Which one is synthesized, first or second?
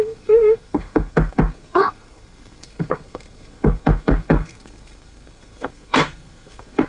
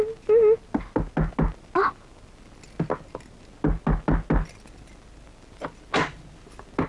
first